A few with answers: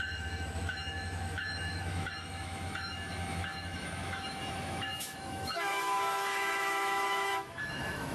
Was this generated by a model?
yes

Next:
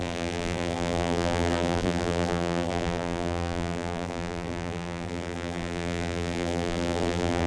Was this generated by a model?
yes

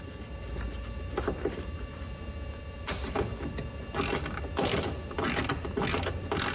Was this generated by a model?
no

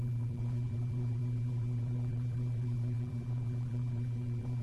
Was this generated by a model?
yes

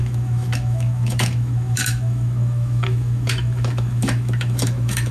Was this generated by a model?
yes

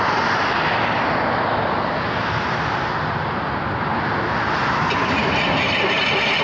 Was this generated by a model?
no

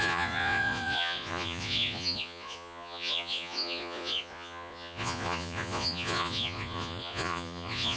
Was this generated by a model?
yes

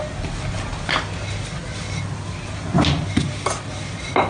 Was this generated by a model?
no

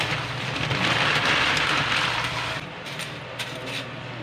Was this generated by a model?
yes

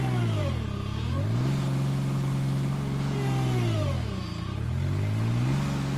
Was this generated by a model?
no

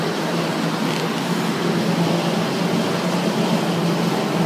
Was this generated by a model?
no